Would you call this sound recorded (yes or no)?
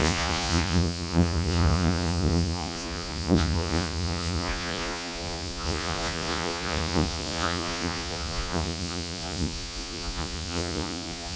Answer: no